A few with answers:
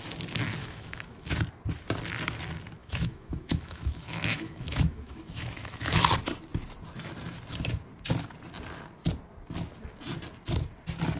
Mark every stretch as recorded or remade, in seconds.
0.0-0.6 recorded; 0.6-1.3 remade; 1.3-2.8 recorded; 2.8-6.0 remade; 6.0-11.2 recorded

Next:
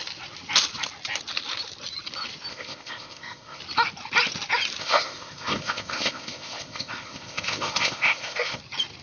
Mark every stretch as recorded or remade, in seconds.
0.0-2.5 recorded; 2.5-3.6 remade; 3.6-4.8 recorded; 4.8-8.6 remade; 8.6-9.0 recorded

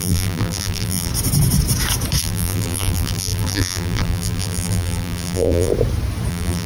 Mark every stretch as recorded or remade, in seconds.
0.0-1.1 remade; 1.1-2.2 recorded; 2.2-5.7 remade; 5.7-6.3 recorded; 6.3-6.7 remade

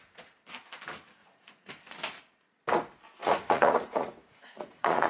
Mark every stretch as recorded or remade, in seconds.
0.0-1.2 recorded; 1.2-1.7 remade; 1.7-3.2 recorded; 3.2-5.1 remade